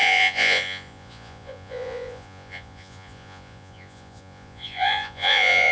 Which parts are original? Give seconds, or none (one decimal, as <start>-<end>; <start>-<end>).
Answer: none